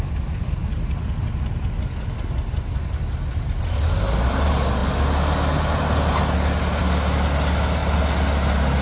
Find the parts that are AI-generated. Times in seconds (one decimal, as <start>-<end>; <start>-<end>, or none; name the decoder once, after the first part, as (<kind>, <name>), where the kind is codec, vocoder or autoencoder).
none